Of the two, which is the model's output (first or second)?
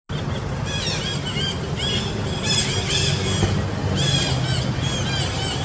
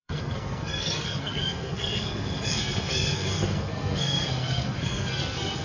second